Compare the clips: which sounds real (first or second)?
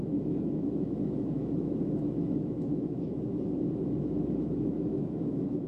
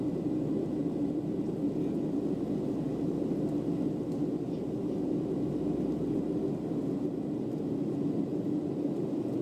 second